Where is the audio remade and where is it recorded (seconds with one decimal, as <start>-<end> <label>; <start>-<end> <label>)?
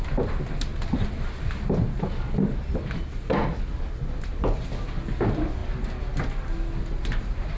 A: 0.0-7.6 recorded